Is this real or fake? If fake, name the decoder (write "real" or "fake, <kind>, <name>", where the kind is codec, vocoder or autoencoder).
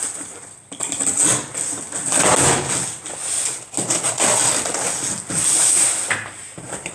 real